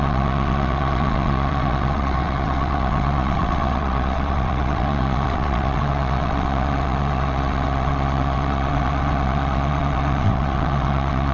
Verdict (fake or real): fake